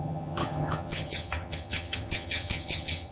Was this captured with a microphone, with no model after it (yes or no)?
no